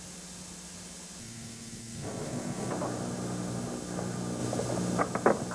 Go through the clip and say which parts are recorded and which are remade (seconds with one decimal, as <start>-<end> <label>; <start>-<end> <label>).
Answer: 0.0-1.2 recorded; 1.2-2.7 remade; 2.7-5.5 recorded